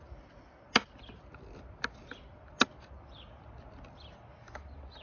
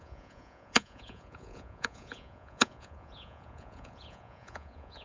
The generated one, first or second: second